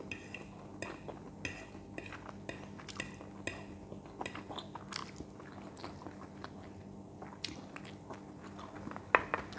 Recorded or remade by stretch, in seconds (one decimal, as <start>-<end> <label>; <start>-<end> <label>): 0.0-9.6 recorded